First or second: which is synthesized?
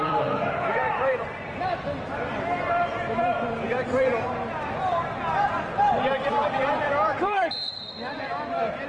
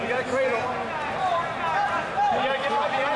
first